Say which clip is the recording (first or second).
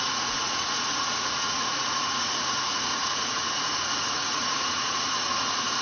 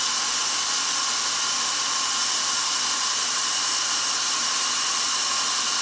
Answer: second